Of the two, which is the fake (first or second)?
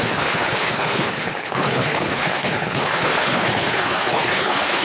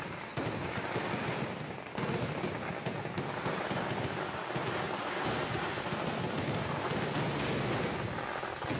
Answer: first